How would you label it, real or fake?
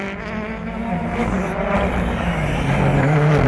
real